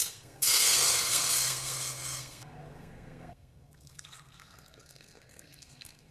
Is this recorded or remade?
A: remade